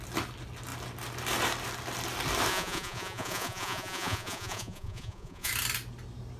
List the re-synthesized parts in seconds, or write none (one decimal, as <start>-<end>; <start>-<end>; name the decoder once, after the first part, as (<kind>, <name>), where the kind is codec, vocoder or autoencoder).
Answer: 2.5-5.5 (vocoder, Vocos)